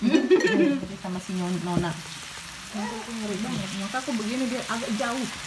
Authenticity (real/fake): real